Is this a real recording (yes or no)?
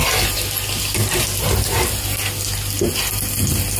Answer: yes